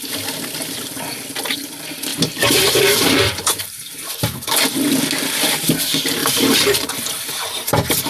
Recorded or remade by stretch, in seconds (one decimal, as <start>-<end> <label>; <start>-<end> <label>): 0.0-2.1 recorded; 2.1-4.1 remade; 4.1-6.2 recorded; 6.2-6.9 remade; 6.9-8.1 recorded